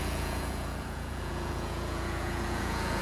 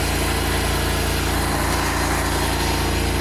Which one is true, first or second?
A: second